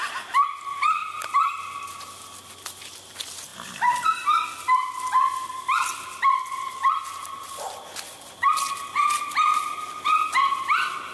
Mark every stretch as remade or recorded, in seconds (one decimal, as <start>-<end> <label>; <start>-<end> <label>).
0.0-11.1 recorded